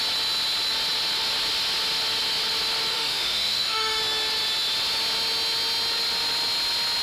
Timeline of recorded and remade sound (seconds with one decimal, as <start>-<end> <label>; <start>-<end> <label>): 0.0-2.9 recorded; 2.9-4.0 remade; 4.0-7.0 recorded